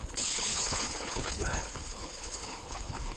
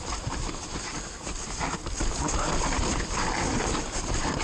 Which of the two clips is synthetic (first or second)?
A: first